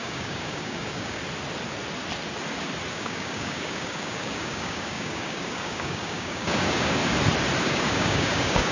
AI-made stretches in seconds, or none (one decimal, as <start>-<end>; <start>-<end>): 0.0-1.2; 2.9-7.0; 7.6-8.7